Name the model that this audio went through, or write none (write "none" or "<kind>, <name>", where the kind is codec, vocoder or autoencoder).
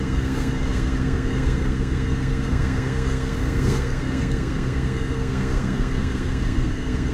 codec, SNAC